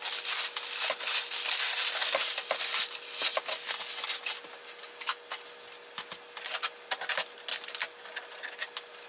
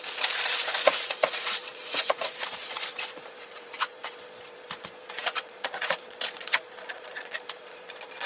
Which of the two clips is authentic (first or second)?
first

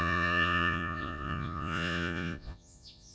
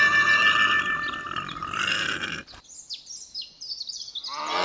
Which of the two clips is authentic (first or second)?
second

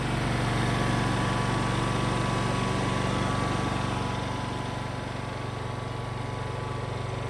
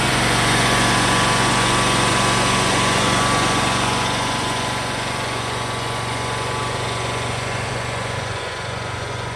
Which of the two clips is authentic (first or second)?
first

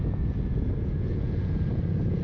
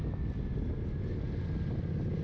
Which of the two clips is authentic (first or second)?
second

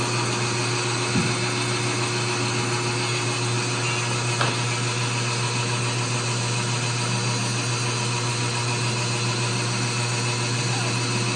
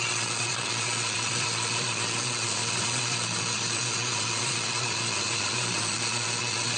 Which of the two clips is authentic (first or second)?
first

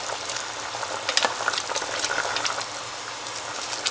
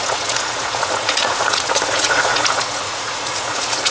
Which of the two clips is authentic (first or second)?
first